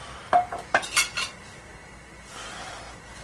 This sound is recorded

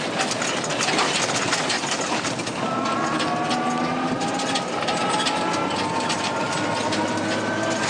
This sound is recorded